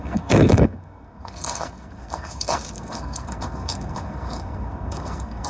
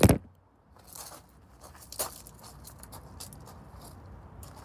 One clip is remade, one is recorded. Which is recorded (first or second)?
second